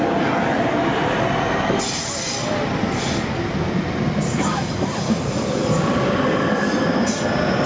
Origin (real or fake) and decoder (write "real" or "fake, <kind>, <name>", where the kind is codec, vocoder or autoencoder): real